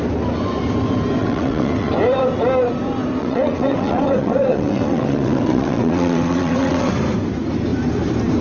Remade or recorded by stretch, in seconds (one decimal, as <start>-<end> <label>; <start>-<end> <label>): 0.0-1.2 recorded; 1.2-1.9 remade; 1.9-3.2 recorded; 3.2-6.9 remade; 6.9-8.4 recorded

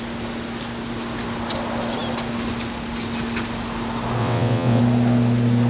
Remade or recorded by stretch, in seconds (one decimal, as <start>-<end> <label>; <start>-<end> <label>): 0.0-4.2 recorded; 4.2-4.8 remade; 4.8-5.7 recorded

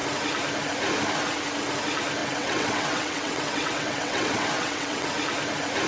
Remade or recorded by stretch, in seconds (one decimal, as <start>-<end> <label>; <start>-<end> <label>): 0.0-2.2 recorded; 2.2-5.1 remade; 5.1-5.9 recorded

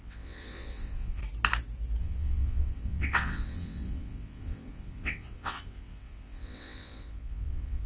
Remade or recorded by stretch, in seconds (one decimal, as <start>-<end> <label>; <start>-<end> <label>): 0.0-1.2 remade; 1.2-2.0 recorded; 2.0-7.9 remade

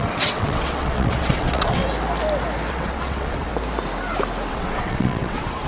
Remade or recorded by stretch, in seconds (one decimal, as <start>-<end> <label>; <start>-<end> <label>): 0.0-1.8 remade; 1.8-2.7 recorded; 2.7-3.5 remade; 3.5-4.5 recorded; 4.5-5.7 remade

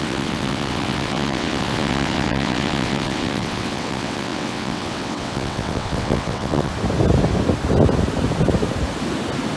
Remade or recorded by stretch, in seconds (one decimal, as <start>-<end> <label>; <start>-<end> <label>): 0.0-6.7 remade; 6.7-9.6 recorded

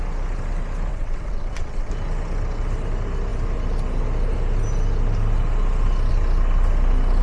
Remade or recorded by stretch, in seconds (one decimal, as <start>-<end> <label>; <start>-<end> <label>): 0.0-0.9 recorded; 0.9-1.9 remade; 1.9-7.2 recorded

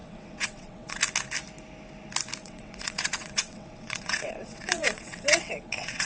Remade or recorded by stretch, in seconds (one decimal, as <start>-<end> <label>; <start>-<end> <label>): 0.0-1.0 remade; 1.0-2.4 recorded; 2.4-6.1 remade